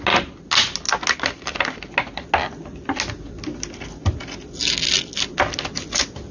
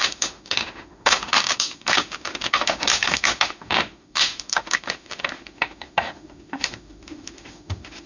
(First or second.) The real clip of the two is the first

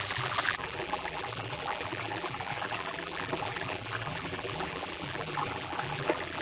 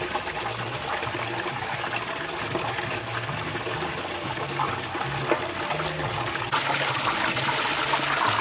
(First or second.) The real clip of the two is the second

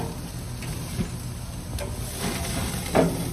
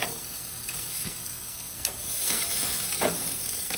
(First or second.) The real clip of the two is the first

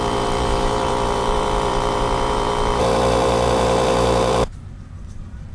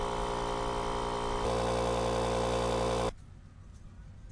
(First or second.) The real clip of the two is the second